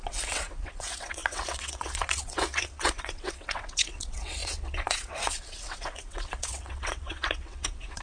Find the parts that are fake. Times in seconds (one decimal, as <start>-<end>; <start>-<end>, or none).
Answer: 0.0-8.0